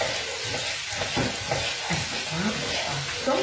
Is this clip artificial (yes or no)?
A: no